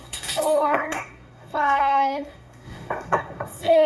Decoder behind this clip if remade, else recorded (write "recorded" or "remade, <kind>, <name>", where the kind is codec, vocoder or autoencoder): remade, codec, SNAC